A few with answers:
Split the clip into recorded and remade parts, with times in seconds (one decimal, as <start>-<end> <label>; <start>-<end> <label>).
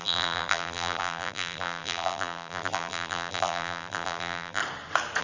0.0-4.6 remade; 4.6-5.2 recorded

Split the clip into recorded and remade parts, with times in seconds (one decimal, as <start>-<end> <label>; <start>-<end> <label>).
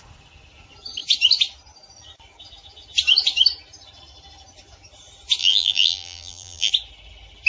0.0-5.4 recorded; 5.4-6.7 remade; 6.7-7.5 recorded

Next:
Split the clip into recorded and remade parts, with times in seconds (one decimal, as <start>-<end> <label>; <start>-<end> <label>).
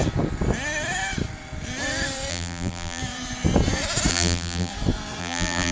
0.0-2.3 recorded; 2.3-3.0 remade; 3.0-4.1 recorded; 4.1-4.7 remade; 4.7-5.2 recorded; 5.2-5.7 remade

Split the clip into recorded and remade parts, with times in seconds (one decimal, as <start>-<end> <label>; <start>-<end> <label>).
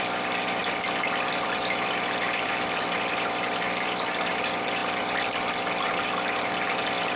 0.0-0.6 recorded; 0.6-4.3 remade; 4.3-7.2 recorded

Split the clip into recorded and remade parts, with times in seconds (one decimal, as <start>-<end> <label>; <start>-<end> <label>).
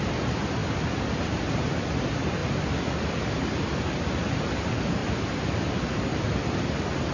0.0-5.0 recorded; 5.0-6.6 remade; 6.6-7.1 recorded